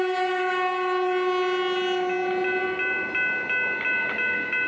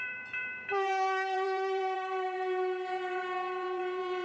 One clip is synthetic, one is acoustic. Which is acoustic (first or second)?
first